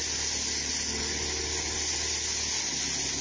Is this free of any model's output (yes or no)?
yes